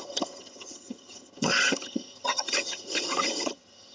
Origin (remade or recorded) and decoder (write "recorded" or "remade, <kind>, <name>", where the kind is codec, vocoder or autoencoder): remade, vocoder, HiFi-GAN